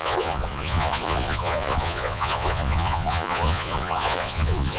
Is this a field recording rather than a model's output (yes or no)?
no